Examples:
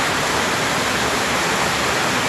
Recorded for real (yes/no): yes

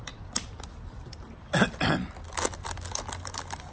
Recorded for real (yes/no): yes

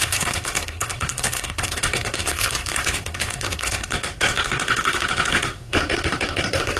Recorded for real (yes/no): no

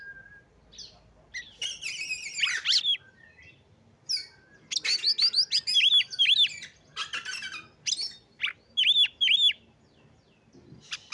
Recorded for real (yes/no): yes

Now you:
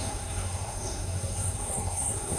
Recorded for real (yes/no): no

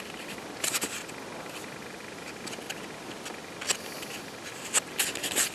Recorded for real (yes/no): yes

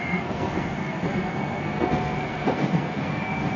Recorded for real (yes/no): no